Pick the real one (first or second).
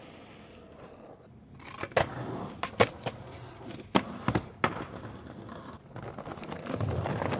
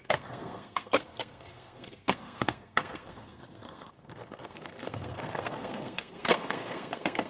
first